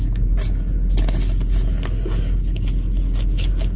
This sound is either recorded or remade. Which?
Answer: recorded